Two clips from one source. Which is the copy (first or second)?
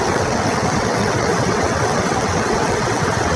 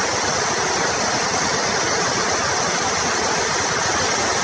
first